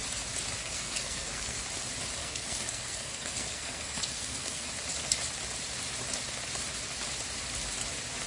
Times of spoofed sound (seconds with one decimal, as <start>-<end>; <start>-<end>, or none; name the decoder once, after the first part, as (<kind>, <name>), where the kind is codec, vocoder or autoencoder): 0.6-1.6 (codec, SNAC); 2.2-4.7